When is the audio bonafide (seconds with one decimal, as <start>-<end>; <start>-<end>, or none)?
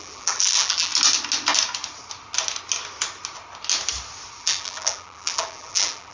0.9-4.4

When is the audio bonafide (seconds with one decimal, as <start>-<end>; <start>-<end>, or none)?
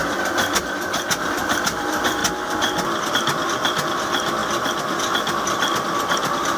0.0-0.6; 2.2-3.1